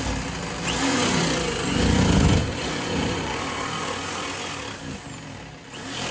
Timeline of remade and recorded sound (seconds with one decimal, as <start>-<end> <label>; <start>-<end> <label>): 0.0-0.9 recorded; 0.9-4.6 remade; 4.6-6.1 recorded